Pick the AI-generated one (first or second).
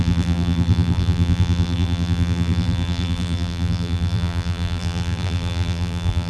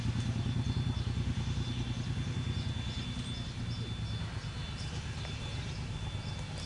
first